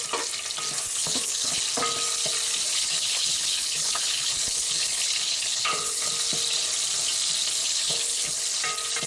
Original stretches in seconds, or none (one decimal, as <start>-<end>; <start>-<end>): 0.0-1.0; 1.6-2.7; 6.1-7.6; 8.4-9.1